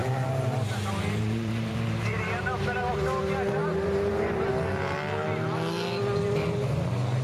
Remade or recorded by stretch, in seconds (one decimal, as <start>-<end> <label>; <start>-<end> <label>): 0.0-2.9 remade; 2.9-3.6 recorded; 3.6-4.5 remade; 4.5-7.2 recorded